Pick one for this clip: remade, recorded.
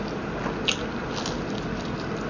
recorded